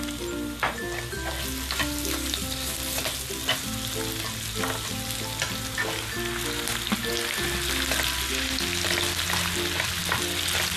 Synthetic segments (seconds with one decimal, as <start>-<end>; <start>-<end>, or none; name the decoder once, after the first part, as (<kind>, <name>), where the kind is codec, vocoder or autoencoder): none